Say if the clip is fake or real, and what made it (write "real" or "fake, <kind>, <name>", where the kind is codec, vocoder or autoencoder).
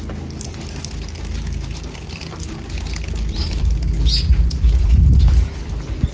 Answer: real